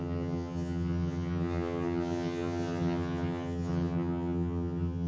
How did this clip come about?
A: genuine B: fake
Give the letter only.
B